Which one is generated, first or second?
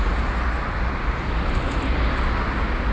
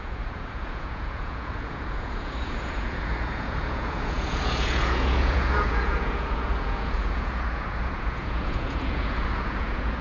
second